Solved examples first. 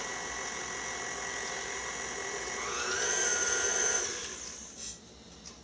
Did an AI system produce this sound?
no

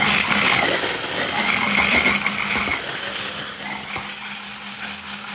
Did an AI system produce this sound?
no